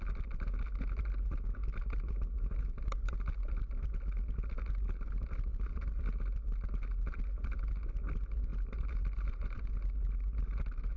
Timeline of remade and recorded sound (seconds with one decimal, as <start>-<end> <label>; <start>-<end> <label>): 0.0-8.5 recorded; 8.5-9.7 remade; 9.7-11.0 recorded